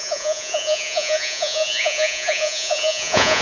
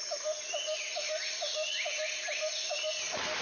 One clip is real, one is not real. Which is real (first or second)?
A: second